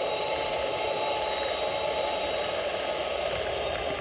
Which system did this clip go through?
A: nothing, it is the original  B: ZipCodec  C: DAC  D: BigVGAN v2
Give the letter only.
D